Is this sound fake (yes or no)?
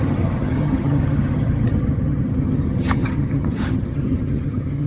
yes